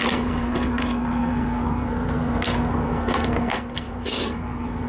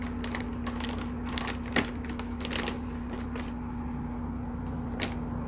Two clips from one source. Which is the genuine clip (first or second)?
second